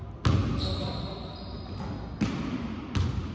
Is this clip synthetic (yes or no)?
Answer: no